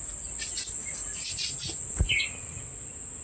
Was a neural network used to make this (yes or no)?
no